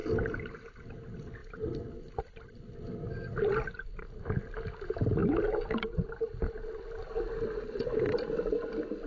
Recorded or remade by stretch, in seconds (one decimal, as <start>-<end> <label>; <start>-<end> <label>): 0.0-9.1 recorded